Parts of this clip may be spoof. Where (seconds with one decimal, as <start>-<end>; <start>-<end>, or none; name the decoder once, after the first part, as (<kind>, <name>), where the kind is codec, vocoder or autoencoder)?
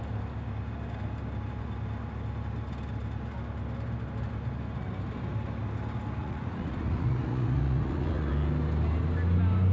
6.2-8.3 (vocoder, Vocos)